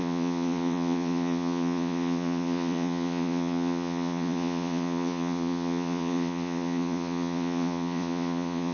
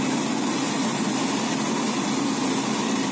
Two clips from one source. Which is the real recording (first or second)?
second